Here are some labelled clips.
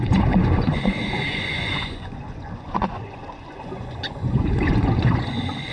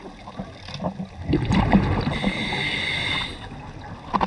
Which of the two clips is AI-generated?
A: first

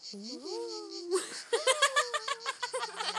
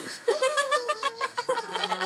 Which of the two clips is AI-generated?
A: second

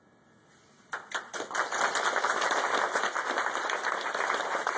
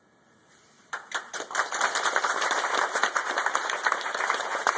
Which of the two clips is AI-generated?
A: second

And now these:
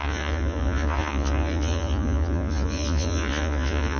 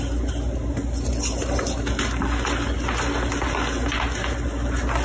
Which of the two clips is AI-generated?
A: first